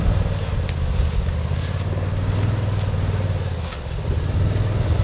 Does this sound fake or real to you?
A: real